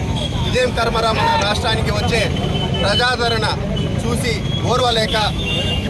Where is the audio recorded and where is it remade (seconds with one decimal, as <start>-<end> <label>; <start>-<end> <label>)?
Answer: 0.0-1.3 remade; 1.3-4.8 recorded; 4.8-5.9 remade